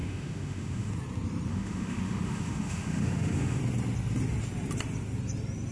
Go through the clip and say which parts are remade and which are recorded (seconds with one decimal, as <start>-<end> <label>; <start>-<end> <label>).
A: 0.0-0.9 remade; 0.9-1.5 recorded; 1.5-3.6 remade; 3.6-5.7 recorded